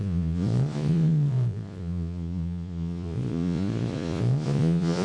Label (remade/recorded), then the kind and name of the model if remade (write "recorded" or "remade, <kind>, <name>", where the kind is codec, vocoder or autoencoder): remade, vocoder, Vocos